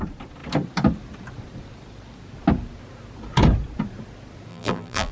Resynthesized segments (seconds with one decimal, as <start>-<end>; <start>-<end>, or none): 4.5-5.1